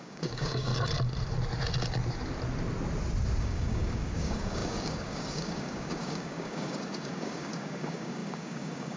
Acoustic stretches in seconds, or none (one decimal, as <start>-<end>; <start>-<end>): 0.7-3.4